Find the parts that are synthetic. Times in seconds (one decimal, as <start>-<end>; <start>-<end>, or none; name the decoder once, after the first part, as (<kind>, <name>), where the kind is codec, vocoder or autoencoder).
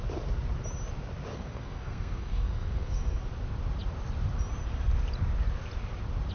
1.3-3.2 (codec, SNAC)